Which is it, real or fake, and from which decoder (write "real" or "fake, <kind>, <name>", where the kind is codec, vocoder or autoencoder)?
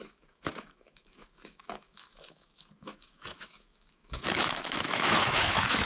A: fake, autoencoder, DAC-VAE